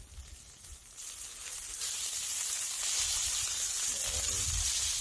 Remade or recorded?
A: remade